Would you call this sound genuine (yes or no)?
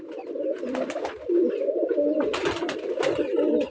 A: no